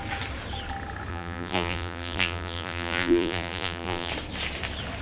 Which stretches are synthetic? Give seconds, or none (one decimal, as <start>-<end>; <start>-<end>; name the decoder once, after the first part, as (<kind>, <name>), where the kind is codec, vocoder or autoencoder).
1.1-4.1 (vocoder, BigVGAN v2)